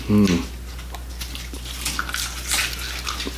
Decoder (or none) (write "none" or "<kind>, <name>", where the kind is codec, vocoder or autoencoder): none